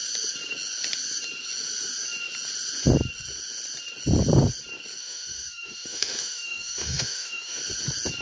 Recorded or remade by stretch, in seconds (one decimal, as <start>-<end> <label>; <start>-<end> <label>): 0.0-5.0 recorded; 5.0-7.6 remade; 7.6-8.2 recorded

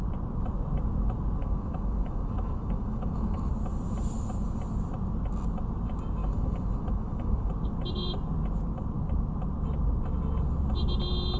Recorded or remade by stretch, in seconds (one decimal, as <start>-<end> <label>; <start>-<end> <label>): 0.0-1.4 recorded; 1.4-3.5 remade; 3.5-6.2 recorded; 6.2-7.5 remade; 7.5-11.4 recorded

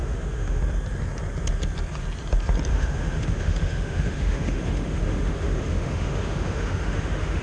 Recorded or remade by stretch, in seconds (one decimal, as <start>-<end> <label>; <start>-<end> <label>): 0.0-0.6 remade; 0.6-2.7 recorded; 2.7-7.4 remade

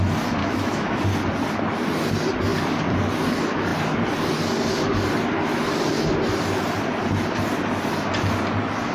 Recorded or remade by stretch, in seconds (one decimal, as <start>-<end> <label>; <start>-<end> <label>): 0.0-0.4 recorded; 0.4-1.0 remade; 1.0-8.9 recorded